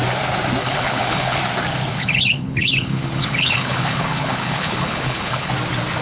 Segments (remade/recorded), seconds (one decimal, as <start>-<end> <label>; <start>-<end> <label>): 0.0-0.6 recorded; 0.6-1.4 remade; 1.4-1.9 recorded; 1.9-5.5 remade; 5.5-6.0 recorded